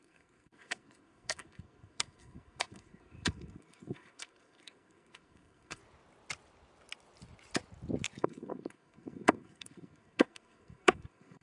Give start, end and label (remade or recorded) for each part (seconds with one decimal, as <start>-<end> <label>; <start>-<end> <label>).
0.0-5.8 remade; 5.8-8.2 recorded; 8.2-11.4 remade